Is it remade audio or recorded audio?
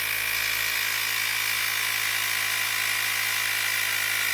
recorded